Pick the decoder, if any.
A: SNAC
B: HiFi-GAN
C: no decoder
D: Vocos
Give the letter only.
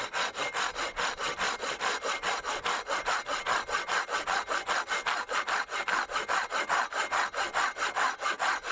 C